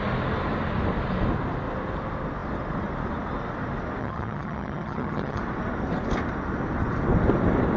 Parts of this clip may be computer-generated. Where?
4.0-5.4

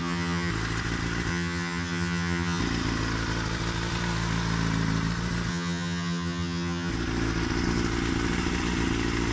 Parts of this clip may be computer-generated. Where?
0.0-0.5; 1.3-2.6; 5.5-6.9

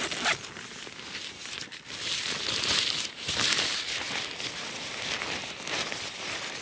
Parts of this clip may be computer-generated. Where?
none